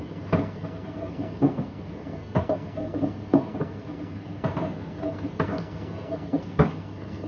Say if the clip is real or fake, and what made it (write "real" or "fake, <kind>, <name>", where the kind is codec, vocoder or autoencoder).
fake, codec, SNAC